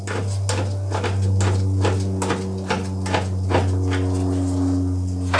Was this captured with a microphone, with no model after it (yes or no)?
yes